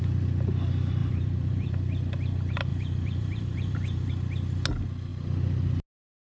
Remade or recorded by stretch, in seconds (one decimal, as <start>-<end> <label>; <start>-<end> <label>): 0.0-1.0 recorded; 1.0-1.7 remade; 1.7-2.7 recorded; 2.7-4.1 remade; 4.1-6.2 recorded